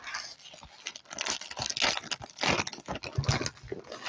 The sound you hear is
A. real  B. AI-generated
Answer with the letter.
A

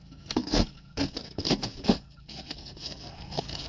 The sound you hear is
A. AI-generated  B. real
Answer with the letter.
A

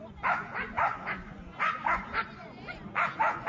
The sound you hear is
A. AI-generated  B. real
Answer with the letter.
A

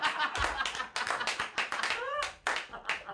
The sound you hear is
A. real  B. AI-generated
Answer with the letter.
A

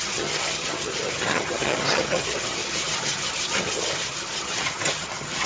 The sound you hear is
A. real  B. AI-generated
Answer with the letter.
B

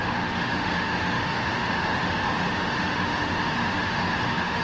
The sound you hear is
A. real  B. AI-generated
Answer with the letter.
B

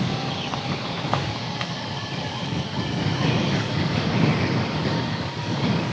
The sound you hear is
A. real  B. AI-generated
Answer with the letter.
B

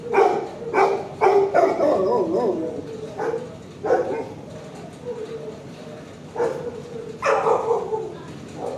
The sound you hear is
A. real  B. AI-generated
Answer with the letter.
A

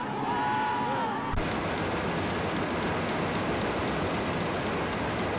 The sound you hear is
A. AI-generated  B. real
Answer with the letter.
B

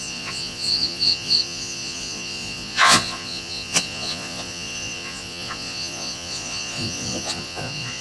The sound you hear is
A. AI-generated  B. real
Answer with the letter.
A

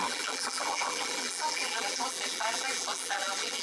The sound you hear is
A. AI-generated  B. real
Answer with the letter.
A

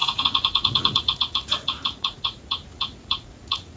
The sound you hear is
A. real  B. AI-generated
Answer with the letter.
B